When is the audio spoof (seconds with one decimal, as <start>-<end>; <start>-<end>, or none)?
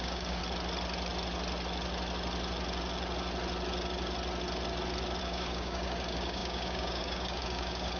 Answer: 0.0-0.4; 5.2-8.0